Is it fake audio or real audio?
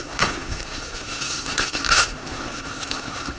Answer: fake